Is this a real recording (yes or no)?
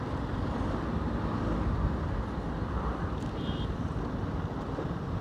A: yes